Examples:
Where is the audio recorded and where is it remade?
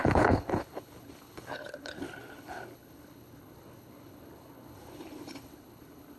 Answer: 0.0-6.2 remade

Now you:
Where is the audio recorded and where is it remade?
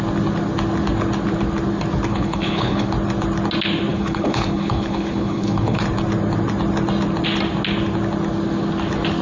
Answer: 0.0-2.1 recorded; 2.1-2.9 remade; 2.9-3.9 recorded; 3.9-5.8 remade; 5.8-9.2 recorded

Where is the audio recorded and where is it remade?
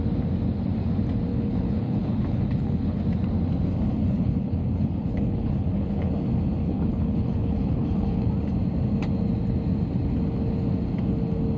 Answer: 0.0-1.3 recorded; 1.3-3.0 remade; 3.0-3.9 recorded; 3.9-6.1 remade; 6.1-6.6 recorded; 6.6-8.3 remade; 8.3-11.6 recorded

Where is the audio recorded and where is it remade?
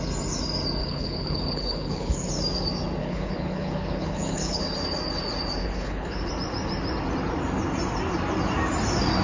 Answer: 0.0-0.8 recorded; 0.8-2.3 remade; 2.3-3.0 recorded; 3.0-4.6 remade; 4.6-5.6 recorded; 5.6-6.3 remade; 6.3-9.2 recorded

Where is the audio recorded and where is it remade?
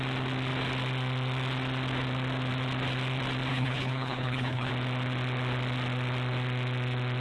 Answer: 0.0-3.5 recorded; 3.5-4.7 remade; 4.7-7.2 recorded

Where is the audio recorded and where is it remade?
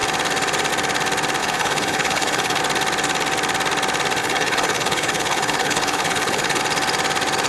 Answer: 0.0-1.4 recorded; 1.4-2.6 remade; 2.6-4.2 recorded; 4.2-6.6 remade; 6.6-7.5 recorded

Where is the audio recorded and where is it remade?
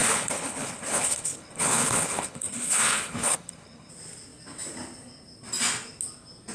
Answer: 0.0-3.9 remade; 3.9-6.5 recorded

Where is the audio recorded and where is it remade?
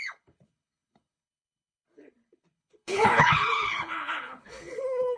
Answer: 0.0-5.2 remade